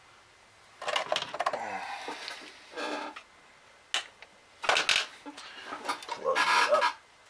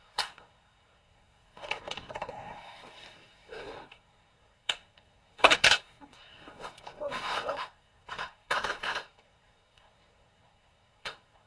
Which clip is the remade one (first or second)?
second